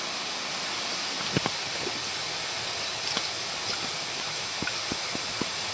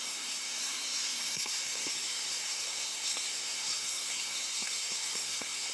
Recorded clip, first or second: first